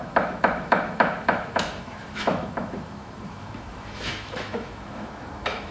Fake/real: fake